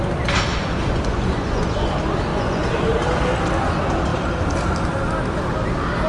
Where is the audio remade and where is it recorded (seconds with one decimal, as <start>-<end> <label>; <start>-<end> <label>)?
0.0-0.6 recorded; 0.6-1.9 remade; 1.9-2.3 recorded; 2.3-3.0 remade; 3.0-6.1 recorded